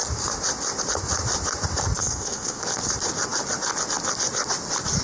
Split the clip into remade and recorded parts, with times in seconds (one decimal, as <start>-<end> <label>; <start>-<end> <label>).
0.0-2.0 recorded; 2.0-2.6 remade; 2.6-5.0 recorded

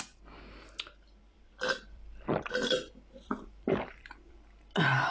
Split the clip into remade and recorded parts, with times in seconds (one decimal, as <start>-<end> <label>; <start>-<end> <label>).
0.0-1.2 recorded; 1.2-4.3 remade; 4.3-5.1 recorded

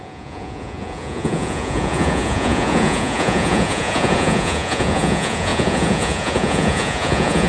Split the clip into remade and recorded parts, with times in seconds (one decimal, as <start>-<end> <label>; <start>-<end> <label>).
0.0-7.5 remade